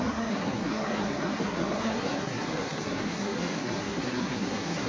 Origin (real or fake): fake